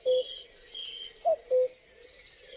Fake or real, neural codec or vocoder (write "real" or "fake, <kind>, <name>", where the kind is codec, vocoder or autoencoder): real